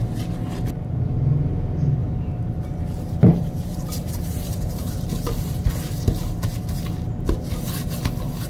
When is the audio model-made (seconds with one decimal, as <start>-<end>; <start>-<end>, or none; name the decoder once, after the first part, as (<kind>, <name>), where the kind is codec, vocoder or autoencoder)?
2.0-5.7 (vocoder, BigVGAN v2)